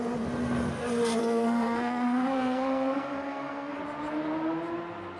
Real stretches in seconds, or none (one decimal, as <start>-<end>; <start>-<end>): 0.0-1.2; 3.8-5.2